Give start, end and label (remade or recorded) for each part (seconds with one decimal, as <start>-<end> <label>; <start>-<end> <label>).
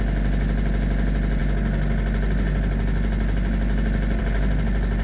0.0-5.0 recorded